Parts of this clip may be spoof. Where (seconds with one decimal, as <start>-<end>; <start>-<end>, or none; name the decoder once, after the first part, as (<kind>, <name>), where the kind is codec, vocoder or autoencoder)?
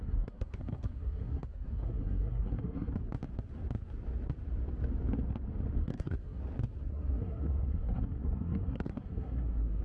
0.0-2.9 (codec, SNAC); 5.8-6.4; 6.9-9.8